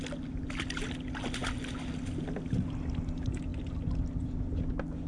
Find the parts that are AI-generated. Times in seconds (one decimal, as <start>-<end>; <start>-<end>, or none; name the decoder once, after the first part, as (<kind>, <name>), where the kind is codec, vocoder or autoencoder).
none